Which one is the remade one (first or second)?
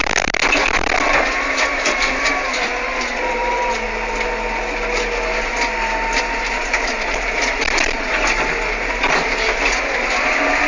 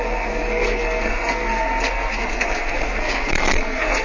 second